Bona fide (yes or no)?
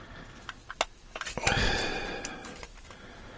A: yes